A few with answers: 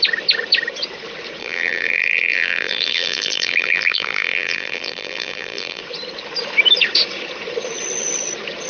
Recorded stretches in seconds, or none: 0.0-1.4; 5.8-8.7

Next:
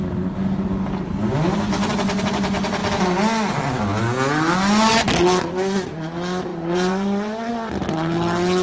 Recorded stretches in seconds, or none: 0.0-6.5; 7.5-8.6

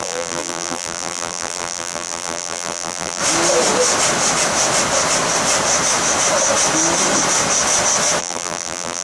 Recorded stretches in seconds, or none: 3.2-8.2

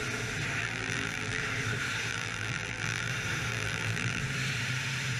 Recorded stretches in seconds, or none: 0.0-0.6; 1.4-2.1; 3.1-3.5; 4.2-5.2

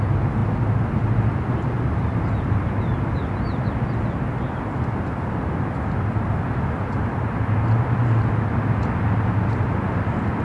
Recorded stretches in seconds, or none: 0.0-0.4; 1.3-10.4

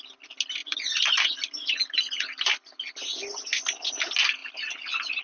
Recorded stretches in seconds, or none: 0.0-0.6; 2.5-5.2

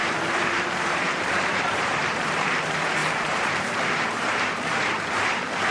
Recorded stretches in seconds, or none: none

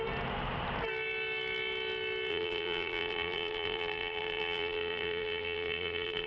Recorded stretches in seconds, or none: 0.0-2.3